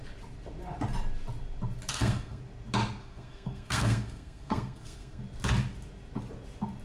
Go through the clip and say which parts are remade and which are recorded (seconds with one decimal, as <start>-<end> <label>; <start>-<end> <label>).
0.0-1.9 recorded; 1.9-2.4 remade; 2.4-3.0 recorded; 3.0-5.2 remade; 5.2-6.8 recorded